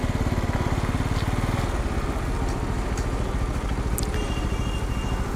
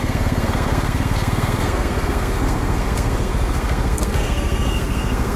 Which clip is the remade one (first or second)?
second